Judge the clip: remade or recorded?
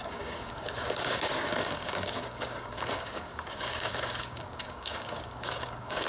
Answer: remade